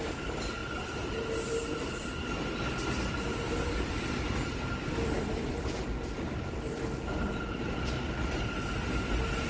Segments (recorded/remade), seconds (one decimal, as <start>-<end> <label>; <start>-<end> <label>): 0.0-9.5 recorded